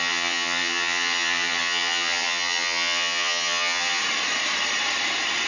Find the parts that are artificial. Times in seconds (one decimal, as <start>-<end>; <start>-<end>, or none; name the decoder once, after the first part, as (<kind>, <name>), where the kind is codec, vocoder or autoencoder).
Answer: 0.0-4.0 (vocoder, HiFi-GAN)